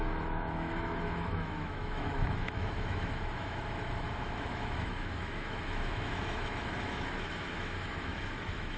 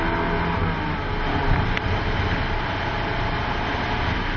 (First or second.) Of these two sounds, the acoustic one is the second